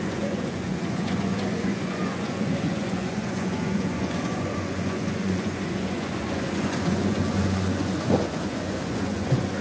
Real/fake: fake